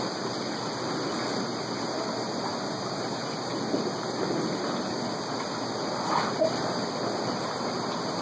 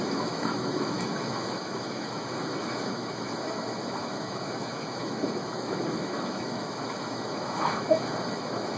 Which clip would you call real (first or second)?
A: first